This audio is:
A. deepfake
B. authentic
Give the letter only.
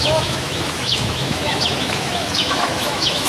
A